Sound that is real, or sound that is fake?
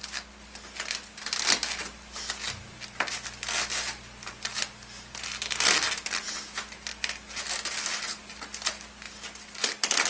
real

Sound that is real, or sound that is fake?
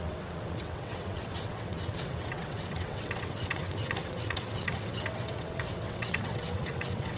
fake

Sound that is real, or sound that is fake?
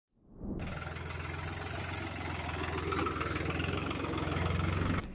real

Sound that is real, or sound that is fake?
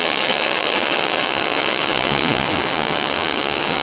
fake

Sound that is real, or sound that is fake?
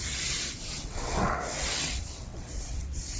fake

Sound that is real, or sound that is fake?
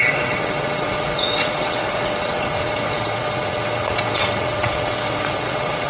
fake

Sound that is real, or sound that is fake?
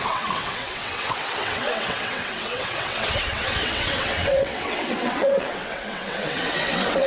fake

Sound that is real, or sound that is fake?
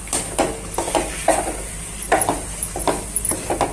real